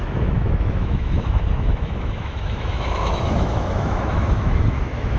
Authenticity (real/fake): fake